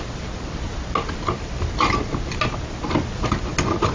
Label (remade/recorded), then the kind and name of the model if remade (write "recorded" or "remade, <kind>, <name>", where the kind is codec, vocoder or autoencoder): recorded